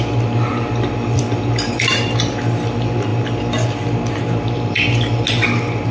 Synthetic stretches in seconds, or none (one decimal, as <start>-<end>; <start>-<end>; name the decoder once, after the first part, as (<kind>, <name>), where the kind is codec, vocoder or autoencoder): 0.5-1.2 (vocoder, BigVGAN v2)